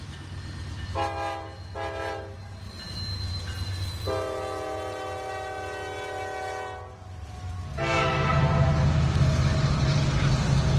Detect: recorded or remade recorded